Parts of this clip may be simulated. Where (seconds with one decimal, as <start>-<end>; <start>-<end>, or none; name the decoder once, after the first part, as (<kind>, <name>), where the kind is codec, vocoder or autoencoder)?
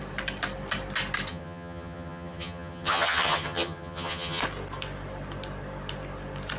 1.3-4.4 (vocoder, HiFi-GAN)